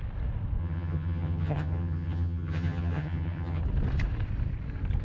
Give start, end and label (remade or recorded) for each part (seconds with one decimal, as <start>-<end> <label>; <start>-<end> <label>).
0.0-0.6 recorded; 0.6-3.6 remade; 3.6-5.0 recorded